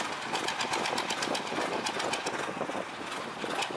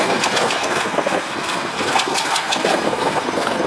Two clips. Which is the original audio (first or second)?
first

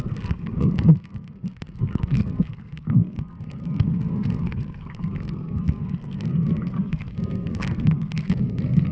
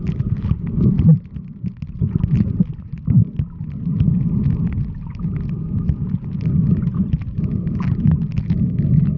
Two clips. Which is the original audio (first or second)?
second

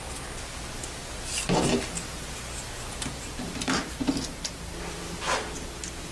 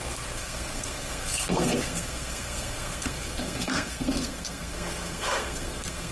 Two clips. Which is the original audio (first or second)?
first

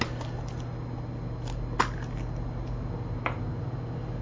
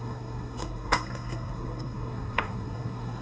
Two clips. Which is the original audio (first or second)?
first